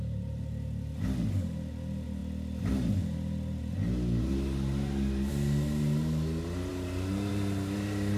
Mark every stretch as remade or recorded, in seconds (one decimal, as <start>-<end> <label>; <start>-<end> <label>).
0.0-8.2 recorded